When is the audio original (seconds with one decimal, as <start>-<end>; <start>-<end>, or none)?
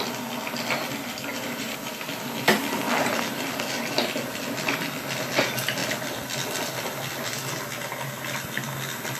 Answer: 0.0-1.3; 2.0-9.2